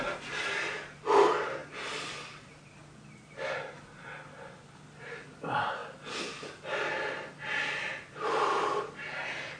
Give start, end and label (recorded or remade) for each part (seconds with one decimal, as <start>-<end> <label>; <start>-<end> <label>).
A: 0.0-9.6 recorded